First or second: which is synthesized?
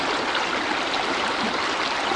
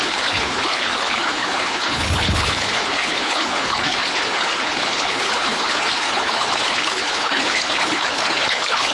second